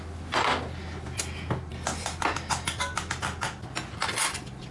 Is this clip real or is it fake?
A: real